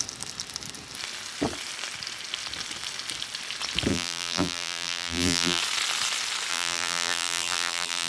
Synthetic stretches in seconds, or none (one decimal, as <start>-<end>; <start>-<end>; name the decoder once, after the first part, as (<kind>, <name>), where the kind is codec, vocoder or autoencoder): 3.9-5.6 (vocoder, BigVGAN v2); 6.5-8.1